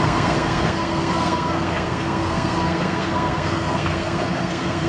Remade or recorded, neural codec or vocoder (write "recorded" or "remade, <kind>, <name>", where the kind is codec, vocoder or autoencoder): remade, codec, SNAC